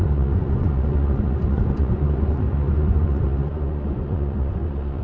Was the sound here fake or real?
fake